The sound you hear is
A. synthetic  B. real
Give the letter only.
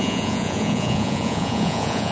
A